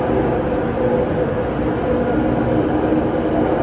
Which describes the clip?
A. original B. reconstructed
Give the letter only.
A